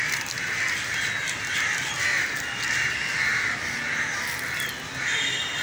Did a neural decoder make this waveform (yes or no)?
no